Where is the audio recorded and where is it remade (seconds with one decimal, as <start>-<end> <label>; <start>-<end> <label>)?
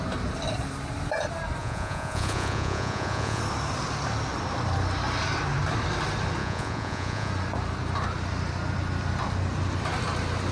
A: 0.0-1.6 recorded; 1.6-3.4 remade; 3.4-6.4 recorded; 6.4-7.3 remade; 7.3-10.5 recorded